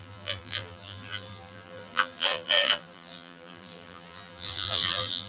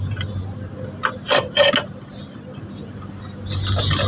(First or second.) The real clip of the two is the second